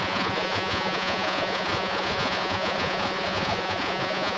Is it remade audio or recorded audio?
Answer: remade